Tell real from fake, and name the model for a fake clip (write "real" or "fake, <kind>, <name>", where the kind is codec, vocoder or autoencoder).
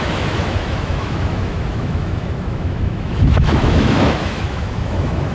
fake, autoencoder, DAC-VAE